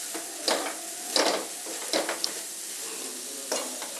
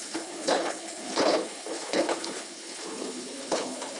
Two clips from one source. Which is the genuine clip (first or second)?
first